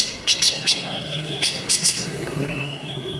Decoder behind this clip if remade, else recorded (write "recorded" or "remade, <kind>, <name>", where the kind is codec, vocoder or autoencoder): remade, codec, SNAC